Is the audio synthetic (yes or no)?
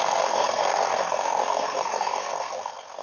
yes